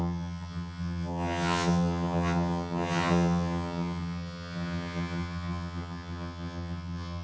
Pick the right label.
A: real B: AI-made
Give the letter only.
B